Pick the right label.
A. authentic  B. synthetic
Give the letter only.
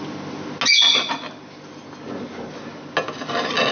A